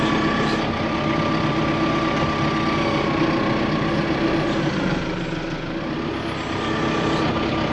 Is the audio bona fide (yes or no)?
yes